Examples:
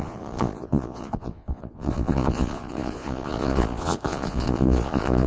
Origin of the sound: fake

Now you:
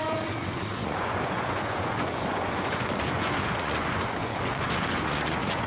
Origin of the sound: fake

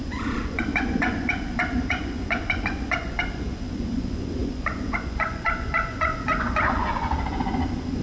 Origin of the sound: fake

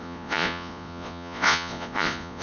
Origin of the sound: fake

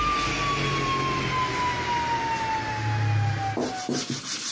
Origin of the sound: real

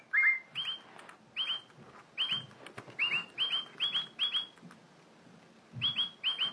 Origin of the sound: real